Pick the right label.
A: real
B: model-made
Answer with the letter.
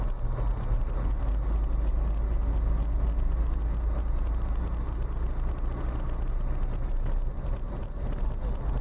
A